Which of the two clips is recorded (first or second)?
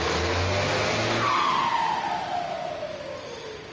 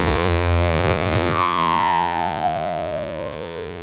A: first